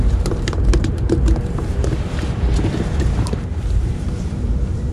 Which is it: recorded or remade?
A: remade